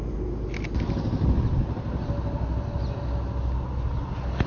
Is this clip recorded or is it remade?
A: recorded